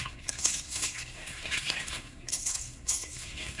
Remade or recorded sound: remade